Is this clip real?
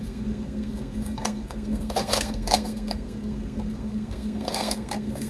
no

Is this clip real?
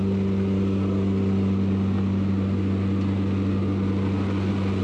yes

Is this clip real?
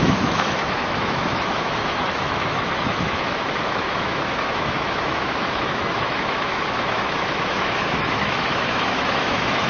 no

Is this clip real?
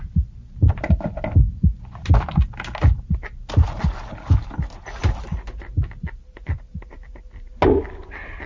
yes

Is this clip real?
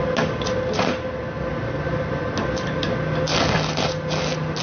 yes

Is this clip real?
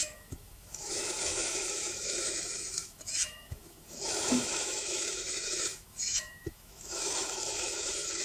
no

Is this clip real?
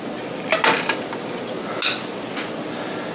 yes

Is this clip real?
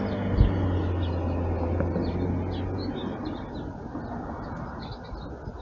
yes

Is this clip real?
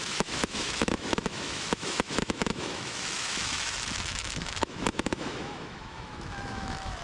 no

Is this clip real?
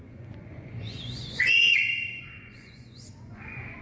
no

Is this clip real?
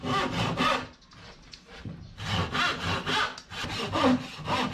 yes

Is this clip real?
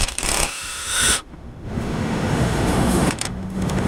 no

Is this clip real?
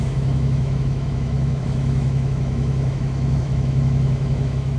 no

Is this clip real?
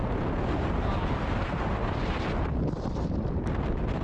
yes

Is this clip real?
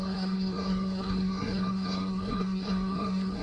no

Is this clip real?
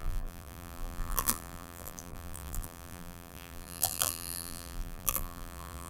no